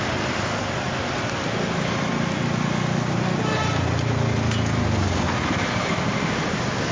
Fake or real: real